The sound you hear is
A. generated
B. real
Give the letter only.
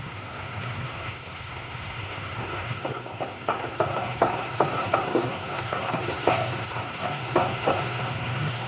A